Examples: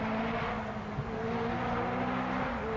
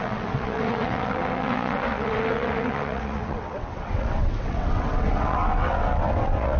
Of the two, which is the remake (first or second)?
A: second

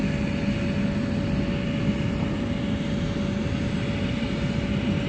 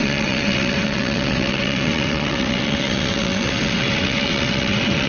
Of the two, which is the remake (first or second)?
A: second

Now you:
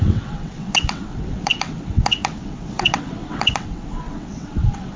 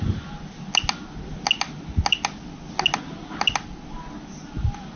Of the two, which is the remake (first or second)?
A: first